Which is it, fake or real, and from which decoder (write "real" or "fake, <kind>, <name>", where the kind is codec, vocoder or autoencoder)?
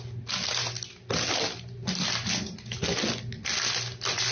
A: real